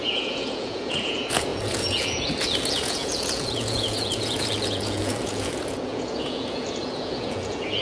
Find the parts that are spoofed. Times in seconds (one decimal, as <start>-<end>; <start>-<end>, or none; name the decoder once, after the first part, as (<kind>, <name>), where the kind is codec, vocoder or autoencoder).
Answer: 0.0-7.8 (vocoder, Vocos)